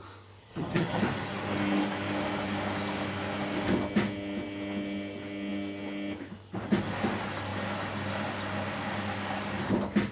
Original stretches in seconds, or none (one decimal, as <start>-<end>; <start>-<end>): 0.0-0.4; 1.0-10.1